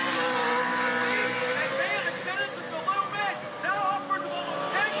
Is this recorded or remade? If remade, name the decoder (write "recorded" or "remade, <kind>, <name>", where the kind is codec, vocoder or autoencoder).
recorded